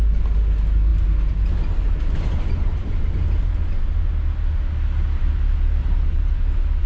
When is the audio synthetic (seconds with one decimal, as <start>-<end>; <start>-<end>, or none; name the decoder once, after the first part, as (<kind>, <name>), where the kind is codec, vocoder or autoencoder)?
none